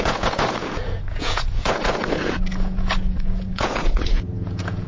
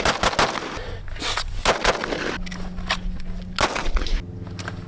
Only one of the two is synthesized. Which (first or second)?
first